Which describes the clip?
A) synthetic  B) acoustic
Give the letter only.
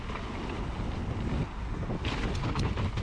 B